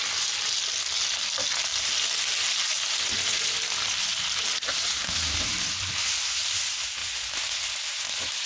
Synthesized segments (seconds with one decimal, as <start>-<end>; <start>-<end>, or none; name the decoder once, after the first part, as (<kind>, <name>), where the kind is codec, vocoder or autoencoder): none